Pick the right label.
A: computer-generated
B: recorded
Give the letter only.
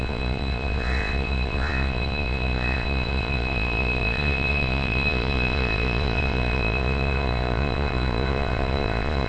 A